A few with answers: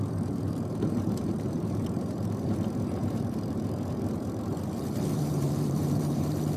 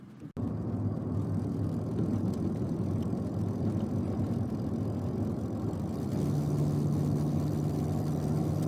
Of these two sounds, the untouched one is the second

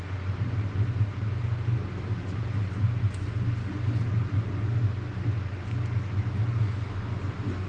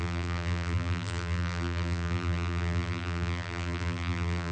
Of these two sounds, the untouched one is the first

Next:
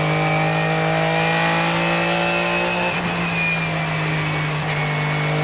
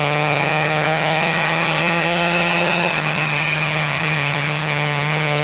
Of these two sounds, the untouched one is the first